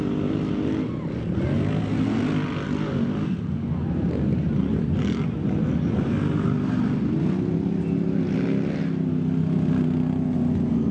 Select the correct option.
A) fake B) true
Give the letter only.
B